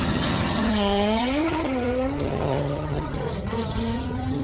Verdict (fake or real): fake